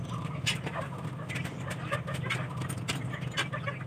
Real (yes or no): yes